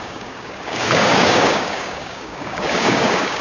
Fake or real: fake